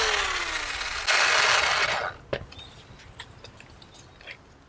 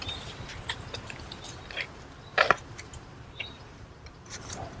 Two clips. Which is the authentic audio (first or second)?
first